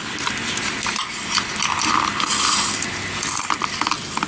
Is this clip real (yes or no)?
yes